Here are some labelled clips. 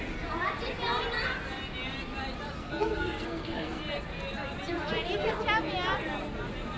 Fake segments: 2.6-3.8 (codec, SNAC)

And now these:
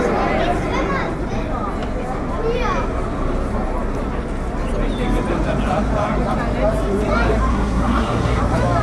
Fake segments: 7.5-8.4 (codec, SNAC)

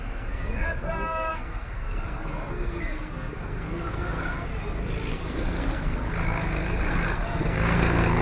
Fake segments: 0.0-4.5 (codec, SNAC); 5.1-8.2

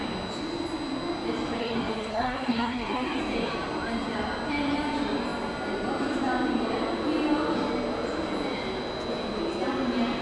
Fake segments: 1.6-3.2 (codec, SNAC)

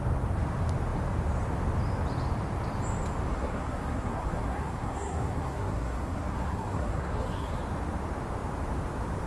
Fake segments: 3.3-7.6 (codec, SNAC)

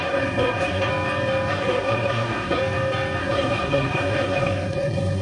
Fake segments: 0.0-0.9 (codec, SNAC); 1.5-2.6; 3.2-5.2

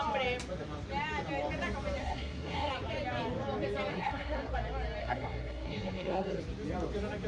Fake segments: 2.0-2.7 (codec, SNAC); 3.9-4.5; 5.0-6.4